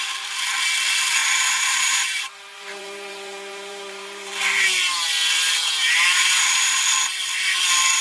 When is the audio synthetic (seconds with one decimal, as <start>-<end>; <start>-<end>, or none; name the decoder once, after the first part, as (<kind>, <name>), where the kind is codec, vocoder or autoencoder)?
1.2-4.3 (vocoder, BigVGAN v2); 5.8-6.8